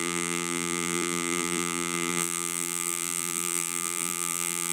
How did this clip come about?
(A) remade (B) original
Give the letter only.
A